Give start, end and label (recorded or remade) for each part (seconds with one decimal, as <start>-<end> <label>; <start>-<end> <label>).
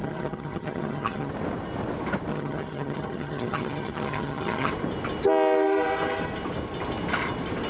0.0-1.3 remade; 1.3-2.3 recorded; 2.3-4.7 remade; 4.7-7.7 recorded